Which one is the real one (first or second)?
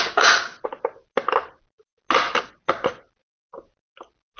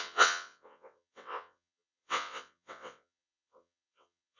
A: first